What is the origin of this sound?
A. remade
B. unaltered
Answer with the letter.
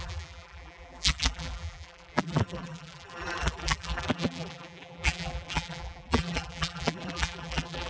A